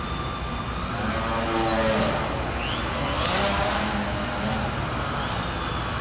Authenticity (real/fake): real